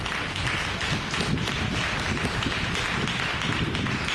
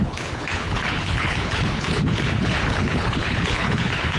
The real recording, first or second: first